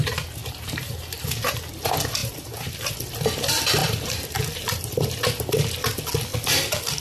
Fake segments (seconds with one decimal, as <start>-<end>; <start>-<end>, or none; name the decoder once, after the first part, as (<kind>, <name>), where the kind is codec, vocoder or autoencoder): 0.4-1.7 (vocoder, BigVGAN v2); 2.2-2.9; 3.8-5.1